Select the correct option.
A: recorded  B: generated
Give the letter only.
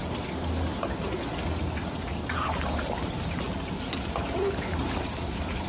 A